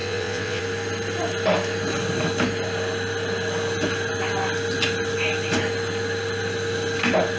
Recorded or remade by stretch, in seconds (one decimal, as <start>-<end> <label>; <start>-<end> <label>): 0.0-0.6 remade; 0.6-7.4 recorded

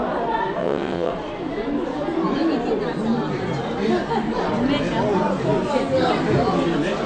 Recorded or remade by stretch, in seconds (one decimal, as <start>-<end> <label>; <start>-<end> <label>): 0.0-0.6 recorded; 0.6-1.1 remade; 1.1-7.1 recorded

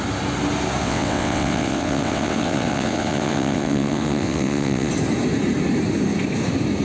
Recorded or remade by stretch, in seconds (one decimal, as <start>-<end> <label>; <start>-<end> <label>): 0.0-0.8 recorded; 0.8-4.9 remade; 4.9-6.8 recorded

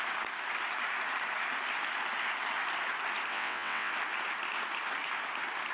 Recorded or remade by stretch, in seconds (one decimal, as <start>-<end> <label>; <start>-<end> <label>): 0.0-3.3 recorded; 3.3-3.9 remade; 3.9-5.7 recorded

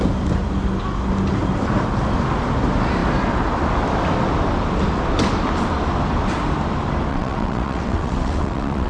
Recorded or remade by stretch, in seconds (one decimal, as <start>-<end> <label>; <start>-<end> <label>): 0.0-7.1 recorded; 7.1-8.9 remade

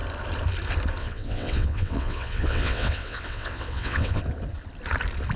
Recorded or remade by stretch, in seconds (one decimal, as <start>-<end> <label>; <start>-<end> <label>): 0.0-1.0 recorded; 1.0-4.2 remade; 4.2-5.4 recorded

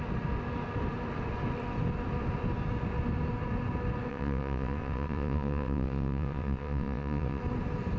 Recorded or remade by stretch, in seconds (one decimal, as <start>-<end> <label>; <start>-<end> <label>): 0.0-4.1 recorded; 4.1-7.4 remade; 7.4-8.0 recorded